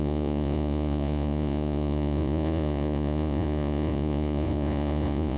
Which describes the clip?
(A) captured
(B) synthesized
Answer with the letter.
B